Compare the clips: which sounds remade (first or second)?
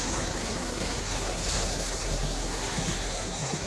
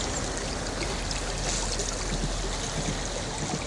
first